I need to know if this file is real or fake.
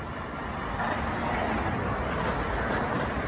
real